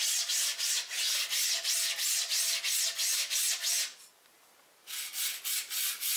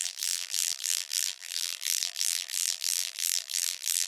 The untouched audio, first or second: first